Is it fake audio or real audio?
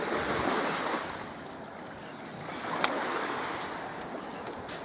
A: real